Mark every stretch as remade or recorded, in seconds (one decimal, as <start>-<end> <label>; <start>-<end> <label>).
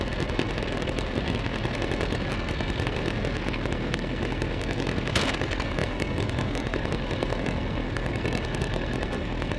0.0-9.6 remade